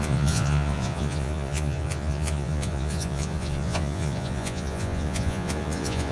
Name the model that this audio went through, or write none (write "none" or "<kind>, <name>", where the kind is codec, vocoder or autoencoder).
vocoder, Vocos